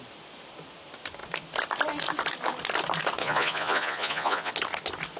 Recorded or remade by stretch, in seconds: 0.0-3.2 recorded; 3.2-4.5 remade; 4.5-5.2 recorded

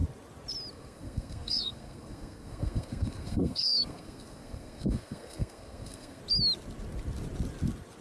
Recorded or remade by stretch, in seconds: 0.0-0.7 recorded; 0.7-6.2 remade; 6.2-8.0 recorded

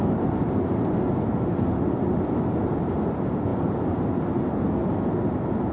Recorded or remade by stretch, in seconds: 0.0-5.7 recorded

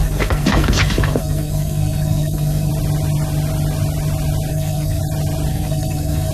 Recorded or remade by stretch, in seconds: 0.0-2.7 remade; 2.7-4.5 recorded; 4.5-5.0 remade; 5.0-5.5 recorded; 5.5-6.3 remade

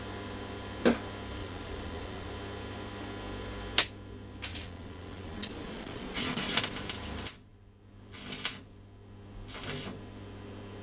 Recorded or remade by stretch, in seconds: 0.0-1.4 recorded; 1.4-2.3 remade; 2.3-4.5 recorded; 4.5-6.6 remade; 6.6-10.8 recorded

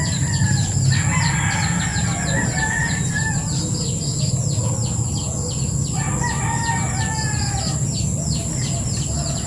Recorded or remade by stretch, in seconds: 0.0-9.5 recorded